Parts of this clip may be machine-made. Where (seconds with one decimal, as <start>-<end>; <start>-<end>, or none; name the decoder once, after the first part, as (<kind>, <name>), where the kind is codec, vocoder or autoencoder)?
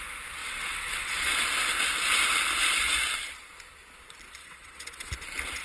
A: 0.4-1.3 (vocoder, WaveNeXt); 4.4-5.1